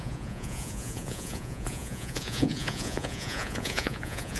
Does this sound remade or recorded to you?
remade